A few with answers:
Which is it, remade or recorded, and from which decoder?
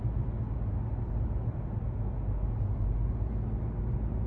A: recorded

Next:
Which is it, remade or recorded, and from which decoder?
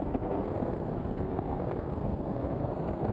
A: remade, codec, SNAC